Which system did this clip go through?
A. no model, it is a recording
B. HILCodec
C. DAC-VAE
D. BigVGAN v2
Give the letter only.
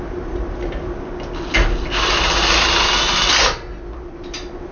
A